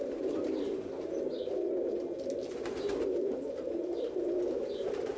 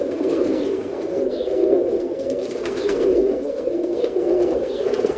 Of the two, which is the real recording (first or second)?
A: first